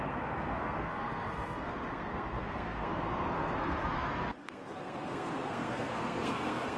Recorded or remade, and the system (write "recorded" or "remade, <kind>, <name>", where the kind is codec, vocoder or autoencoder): remade, codec, SNAC